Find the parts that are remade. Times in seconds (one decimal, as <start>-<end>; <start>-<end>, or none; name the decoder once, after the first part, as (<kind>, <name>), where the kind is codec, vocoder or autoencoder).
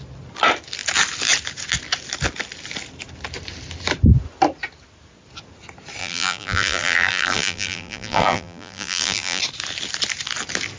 6.0-9.4 (vocoder, BigVGAN v2)